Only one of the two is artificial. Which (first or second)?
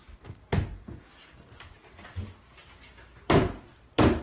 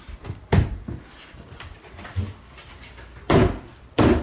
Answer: second